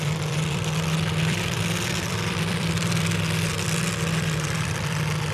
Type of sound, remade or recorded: remade